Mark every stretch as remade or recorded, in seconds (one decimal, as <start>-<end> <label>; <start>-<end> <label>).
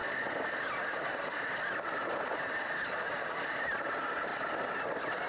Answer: 0.0-5.3 recorded